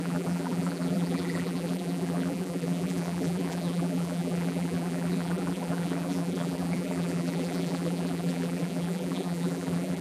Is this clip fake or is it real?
fake